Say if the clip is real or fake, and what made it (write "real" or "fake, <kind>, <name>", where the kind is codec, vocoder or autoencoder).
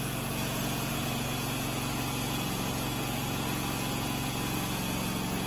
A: fake, vocoder, Vocos